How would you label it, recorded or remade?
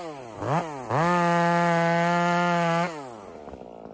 recorded